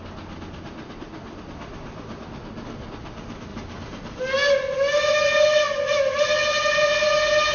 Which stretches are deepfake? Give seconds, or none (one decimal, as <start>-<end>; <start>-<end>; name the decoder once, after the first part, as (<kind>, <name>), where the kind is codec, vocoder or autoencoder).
3.5-4.2 (vocoder, BigVGAN v2)